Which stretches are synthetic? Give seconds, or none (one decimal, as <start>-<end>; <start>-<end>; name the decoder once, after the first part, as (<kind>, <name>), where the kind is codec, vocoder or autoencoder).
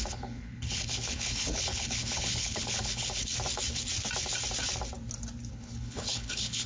0.0-3.3 (codec, HILCodec); 5.5-6.7